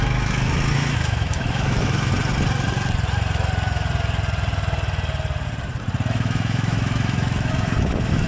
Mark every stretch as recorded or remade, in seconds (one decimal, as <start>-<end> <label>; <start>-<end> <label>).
0.0-2.1 remade; 2.1-6.1 recorded; 6.1-8.3 remade